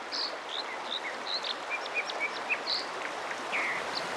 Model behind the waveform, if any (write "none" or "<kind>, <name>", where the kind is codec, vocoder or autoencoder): none